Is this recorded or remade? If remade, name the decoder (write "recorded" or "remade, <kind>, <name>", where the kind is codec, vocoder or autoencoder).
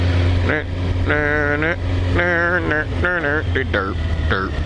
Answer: recorded